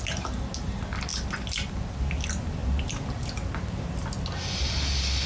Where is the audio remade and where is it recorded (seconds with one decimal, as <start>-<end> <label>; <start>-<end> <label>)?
0.0-5.3 recorded

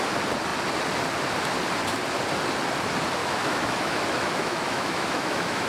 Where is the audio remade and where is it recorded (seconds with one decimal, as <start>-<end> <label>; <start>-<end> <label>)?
0.0-3.2 recorded; 3.2-5.7 remade

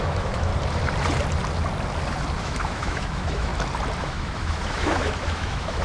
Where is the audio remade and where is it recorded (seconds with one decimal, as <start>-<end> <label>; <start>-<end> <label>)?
0.0-0.5 remade; 0.5-2.4 recorded; 2.4-3.5 remade; 3.5-4.0 recorded; 4.0-5.8 remade

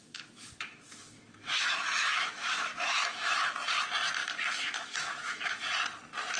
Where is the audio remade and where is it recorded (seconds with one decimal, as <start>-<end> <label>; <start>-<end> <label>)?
0.0-3.5 remade; 3.5-4.2 recorded; 4.2-5.6 remade; 5.6-6.4 recorded

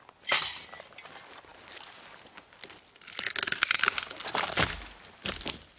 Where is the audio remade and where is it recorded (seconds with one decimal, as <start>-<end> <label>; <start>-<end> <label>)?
0.0-5.8 recorded

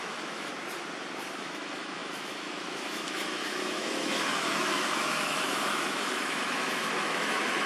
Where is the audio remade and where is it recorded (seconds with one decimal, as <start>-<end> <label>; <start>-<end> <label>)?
0.0-0.5 remade; 0.5-1.4 recorded; 1.4-7.7 remade